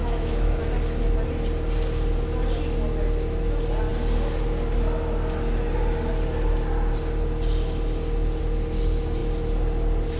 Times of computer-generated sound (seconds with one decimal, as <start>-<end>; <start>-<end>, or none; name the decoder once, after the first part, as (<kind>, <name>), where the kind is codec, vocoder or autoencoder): 0.0-0.6 (autoencoder, DAC-VAE)